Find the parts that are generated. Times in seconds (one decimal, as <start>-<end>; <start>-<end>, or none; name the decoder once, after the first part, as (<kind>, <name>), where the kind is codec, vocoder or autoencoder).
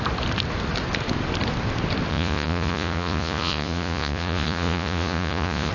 2.1-5.7 (vocoder, Vocos)